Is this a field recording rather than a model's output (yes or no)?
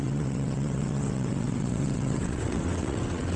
no